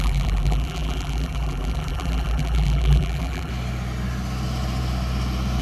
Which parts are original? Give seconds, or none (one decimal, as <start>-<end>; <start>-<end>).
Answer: 3.5-5.6